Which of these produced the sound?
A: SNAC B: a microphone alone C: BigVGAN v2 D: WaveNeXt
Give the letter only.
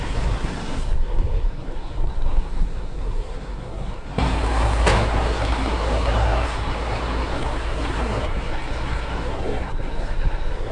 A